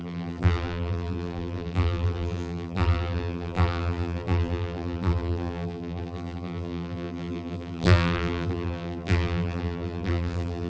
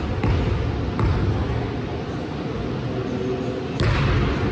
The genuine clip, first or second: second